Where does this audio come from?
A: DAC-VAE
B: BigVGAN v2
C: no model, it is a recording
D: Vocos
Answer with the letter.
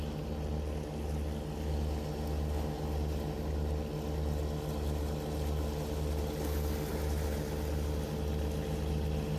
C